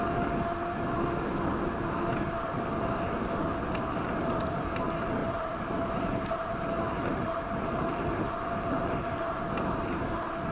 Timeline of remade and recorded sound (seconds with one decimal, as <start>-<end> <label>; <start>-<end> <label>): 0.0-5.2 recorded; 5.2-9.4 remade; 9.4-10.5 recorded